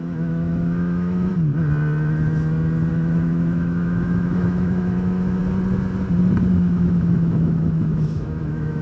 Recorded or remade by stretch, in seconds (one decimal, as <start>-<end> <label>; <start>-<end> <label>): 0.0-1.3 remade; 1.3-2.9 recorded; 2.9-5.4 remade; 5.4-6.5 recorded; 6.5-8.8 remade